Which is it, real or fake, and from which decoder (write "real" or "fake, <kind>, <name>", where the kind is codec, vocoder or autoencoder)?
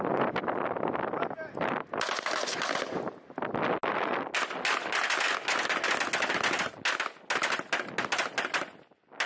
real